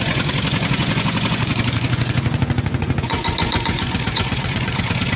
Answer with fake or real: fake